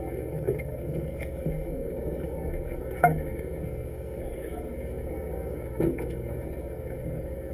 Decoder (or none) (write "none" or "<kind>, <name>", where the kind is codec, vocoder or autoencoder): codec, SNAC